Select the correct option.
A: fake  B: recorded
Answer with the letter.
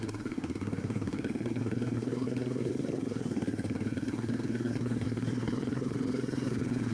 A